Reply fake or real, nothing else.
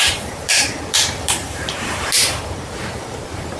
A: fake